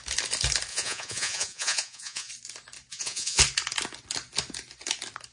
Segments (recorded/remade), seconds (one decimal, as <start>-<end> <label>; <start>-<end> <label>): 0.0-0.7 recorded; 0.7-2.3 remade; 2.3-2.9 recorded; 2.9-3.4 remade; 3.4-5.3 recorded